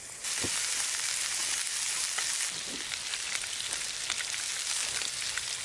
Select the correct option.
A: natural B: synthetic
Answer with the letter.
A